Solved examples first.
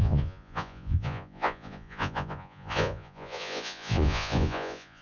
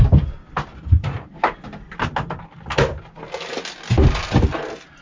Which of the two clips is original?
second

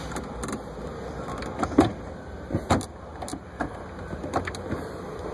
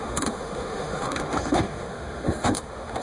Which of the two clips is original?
first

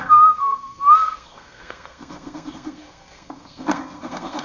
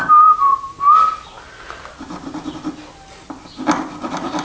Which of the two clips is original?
second